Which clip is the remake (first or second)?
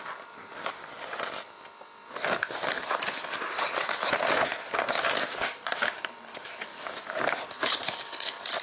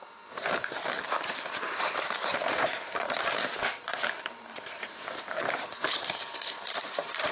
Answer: second